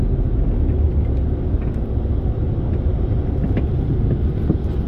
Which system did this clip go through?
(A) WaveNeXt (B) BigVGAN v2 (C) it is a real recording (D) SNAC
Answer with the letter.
C